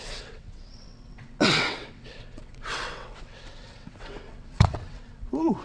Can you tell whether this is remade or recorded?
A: remade